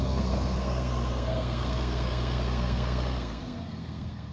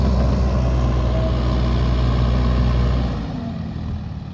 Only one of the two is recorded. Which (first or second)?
second